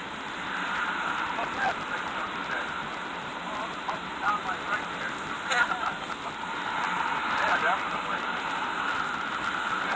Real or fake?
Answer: real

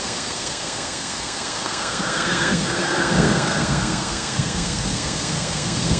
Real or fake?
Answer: fake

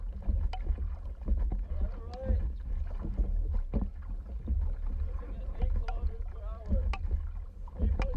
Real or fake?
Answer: real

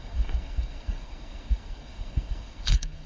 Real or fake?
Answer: fake